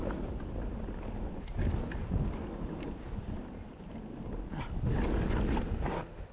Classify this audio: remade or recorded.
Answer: recorded